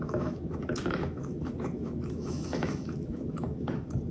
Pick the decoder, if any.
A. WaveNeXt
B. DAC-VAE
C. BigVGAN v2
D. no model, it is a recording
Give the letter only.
B